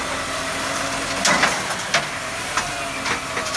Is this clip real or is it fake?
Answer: real